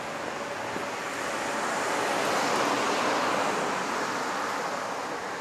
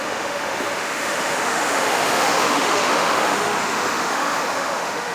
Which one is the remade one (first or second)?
second